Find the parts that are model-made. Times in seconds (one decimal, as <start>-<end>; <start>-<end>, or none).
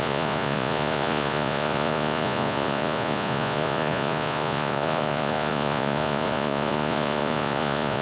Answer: 0.0-8.0